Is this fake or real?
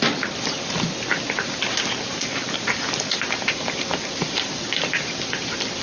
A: real